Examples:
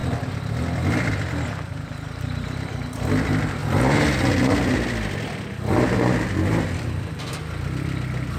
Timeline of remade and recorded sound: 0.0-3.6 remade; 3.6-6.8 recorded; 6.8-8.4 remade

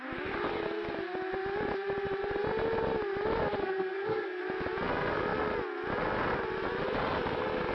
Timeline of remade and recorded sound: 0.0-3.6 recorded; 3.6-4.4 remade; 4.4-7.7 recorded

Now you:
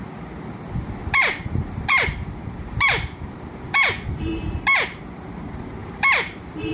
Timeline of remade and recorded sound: 0.0-1.0 recorded; 1.0-5.0 remade; 5.0-5.8 recorded; 5.8-6.7 remade

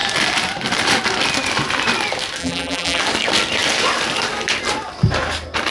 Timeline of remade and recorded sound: 0.0-2.4 recorded; 2.4-3.0 remade; 3.0-5.7 recorded

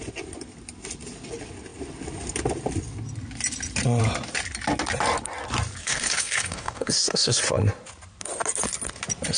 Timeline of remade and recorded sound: 0.0-5.8 recorded; 5.8-7.4 remade; 7.4-9.4 recorded

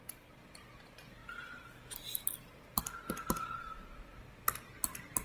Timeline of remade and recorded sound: 0.0-5.2 recorded

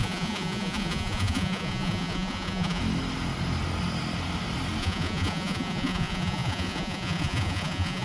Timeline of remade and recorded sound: 0.0-2.8 remade; 2.8-4.8 recorded; 4.8-8.0 remade

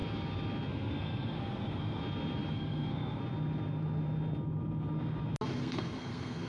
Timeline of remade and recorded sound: 0.0-0.7 recorded; 0.7-2.0 remade; 2.0-2.5 recorded; 2.5-3.2 remade; 3.2-5.6 recorded; 5.6-6.5 remade